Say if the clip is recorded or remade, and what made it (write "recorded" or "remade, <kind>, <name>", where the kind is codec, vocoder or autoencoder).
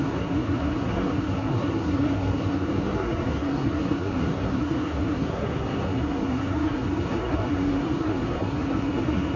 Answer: remade, codec, SNAC